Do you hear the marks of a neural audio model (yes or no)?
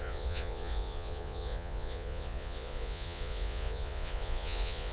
yes